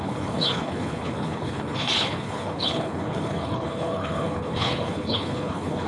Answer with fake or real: fake